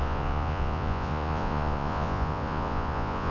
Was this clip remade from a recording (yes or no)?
yes